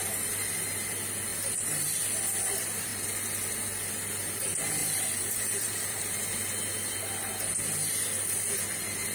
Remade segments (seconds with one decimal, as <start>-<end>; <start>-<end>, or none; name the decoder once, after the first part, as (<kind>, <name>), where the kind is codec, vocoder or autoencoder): 1.3-2.0 (vocoder, BigVGAN v2); 4.8-6.0